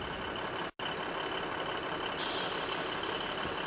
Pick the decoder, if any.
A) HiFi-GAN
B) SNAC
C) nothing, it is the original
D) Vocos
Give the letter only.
C